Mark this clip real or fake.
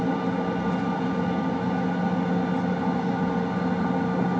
real